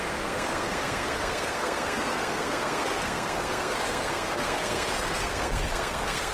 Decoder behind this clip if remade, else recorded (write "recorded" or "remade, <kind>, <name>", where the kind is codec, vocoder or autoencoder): remade, codec, SNAC